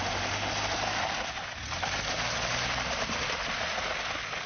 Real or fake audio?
real